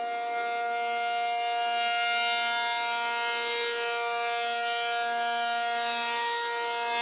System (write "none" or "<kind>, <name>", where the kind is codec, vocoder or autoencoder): none